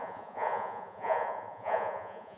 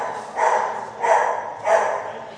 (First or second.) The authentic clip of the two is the second